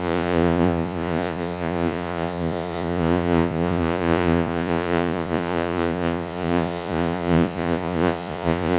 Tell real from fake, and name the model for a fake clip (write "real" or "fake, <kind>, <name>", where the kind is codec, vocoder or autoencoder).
fake, vocoder, Vocos